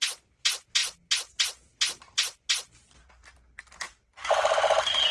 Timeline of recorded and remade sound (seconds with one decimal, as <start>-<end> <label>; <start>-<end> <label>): 0.0-5.1 recorded